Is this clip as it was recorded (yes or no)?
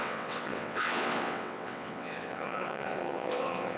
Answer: no